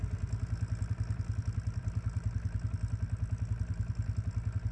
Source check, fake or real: real